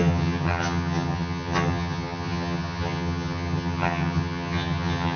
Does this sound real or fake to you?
fake